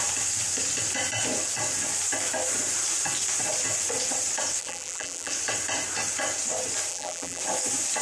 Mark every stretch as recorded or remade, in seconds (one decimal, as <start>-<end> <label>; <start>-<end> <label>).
0.0-4.6 recorded; 4.6-5.3 remade; 5.3-6.9 recorded; 6.9-7.4 remade; 7.4-8.0 recorded